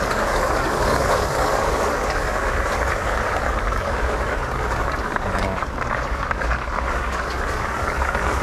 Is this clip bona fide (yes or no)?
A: no